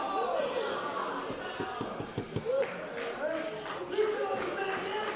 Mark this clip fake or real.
real